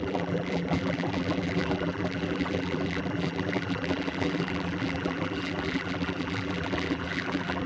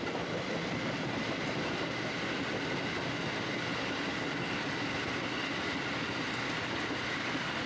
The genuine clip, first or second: second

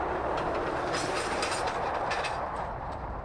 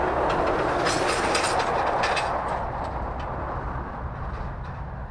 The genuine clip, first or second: second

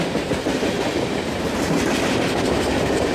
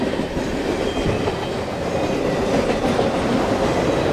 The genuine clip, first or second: second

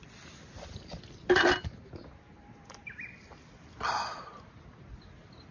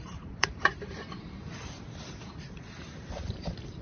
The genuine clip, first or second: first